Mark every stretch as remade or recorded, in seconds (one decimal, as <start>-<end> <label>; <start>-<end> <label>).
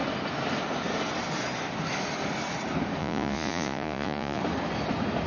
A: 0.0-3.0 recorded; 3.0-4.4 remade; 4.4-5.3 recorded